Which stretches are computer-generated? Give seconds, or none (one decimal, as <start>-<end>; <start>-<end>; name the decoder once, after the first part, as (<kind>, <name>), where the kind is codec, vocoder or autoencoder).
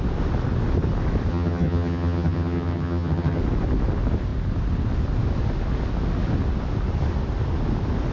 1.3-3.4 (vocoder, HiFi-GAN)